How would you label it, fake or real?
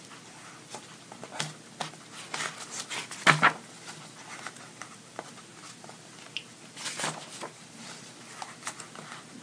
fake